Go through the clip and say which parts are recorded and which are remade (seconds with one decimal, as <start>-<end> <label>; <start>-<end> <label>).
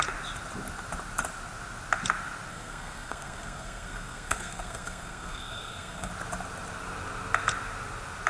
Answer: 0.0-2.5 recorded; 2.5-6.1 remade; 6.1-8.3 recorded